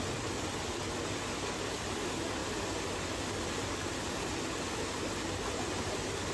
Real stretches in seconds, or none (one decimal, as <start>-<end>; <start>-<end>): 0.0-6.3